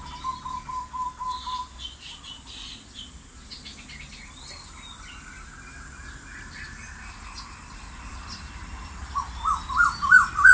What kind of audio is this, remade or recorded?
recorded